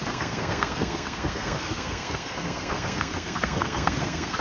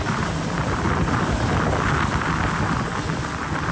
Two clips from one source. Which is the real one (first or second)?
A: second